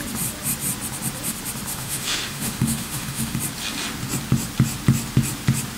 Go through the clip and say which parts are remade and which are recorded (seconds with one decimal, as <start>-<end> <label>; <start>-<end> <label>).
0.0-1.7 recorded; 1.7-3.4 remade; 3.4-5.8 recorded